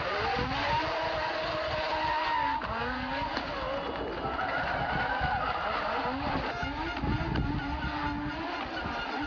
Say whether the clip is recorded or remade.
recorded